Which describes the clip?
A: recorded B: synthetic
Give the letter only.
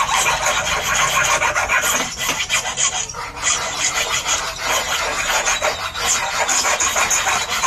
A